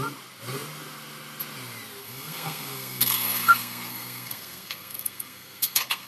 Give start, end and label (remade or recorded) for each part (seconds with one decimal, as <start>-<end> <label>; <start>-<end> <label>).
0.0-2.0 recorded; 2.0-6.1 remade